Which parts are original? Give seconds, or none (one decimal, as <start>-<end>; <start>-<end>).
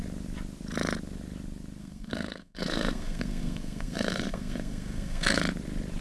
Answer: 0.0-1.8; 5.4-6.0